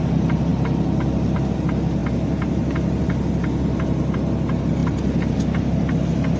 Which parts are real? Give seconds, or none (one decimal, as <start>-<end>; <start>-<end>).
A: 0.0-6.4